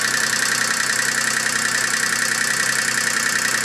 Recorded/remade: recorded